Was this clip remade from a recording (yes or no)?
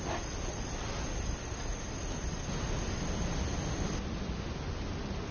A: no